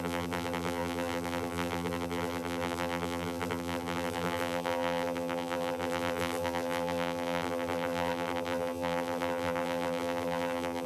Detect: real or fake fake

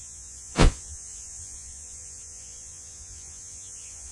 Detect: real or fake fake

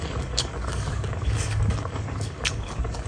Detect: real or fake fake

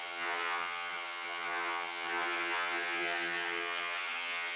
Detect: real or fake fake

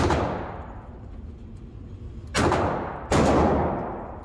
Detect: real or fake real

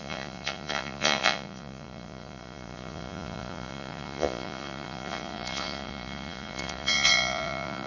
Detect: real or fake fake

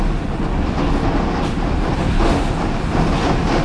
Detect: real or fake real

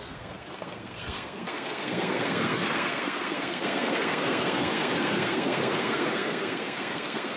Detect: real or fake fake